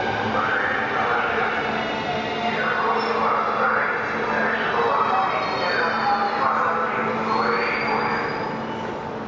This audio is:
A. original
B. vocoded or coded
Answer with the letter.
A